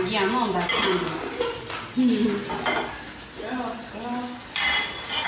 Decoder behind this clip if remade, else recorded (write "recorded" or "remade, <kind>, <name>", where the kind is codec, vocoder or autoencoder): recorded